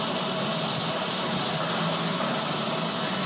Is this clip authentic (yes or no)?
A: yes